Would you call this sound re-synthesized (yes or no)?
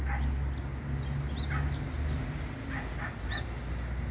no